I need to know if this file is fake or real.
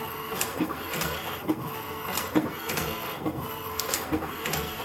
fake